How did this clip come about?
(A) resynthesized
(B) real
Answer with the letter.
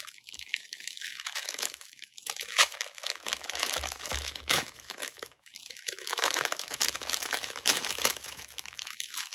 A